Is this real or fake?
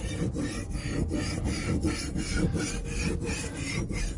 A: real